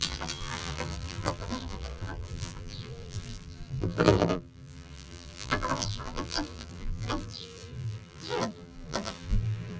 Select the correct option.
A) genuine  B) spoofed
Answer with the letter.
B